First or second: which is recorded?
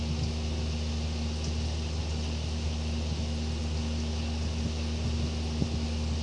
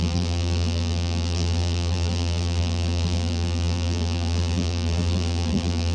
first